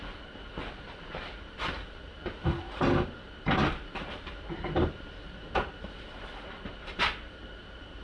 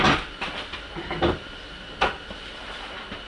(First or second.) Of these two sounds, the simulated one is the first